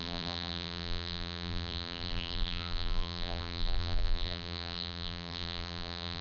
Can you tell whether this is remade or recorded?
remade